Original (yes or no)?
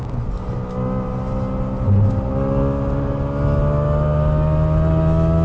yes